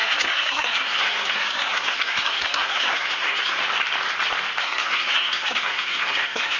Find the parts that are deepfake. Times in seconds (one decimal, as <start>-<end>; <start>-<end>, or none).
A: 0.0-3.6; 4.6-6.6

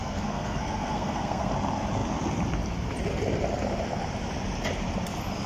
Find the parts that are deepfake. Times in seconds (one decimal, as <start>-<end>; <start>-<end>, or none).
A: 0.0-1.5